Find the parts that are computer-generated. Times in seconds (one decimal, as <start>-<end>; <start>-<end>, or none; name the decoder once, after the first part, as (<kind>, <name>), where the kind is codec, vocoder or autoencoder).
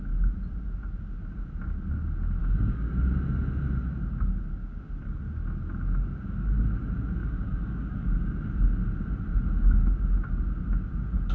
2.4-2.9 (codec, DAC); 7.2-8.4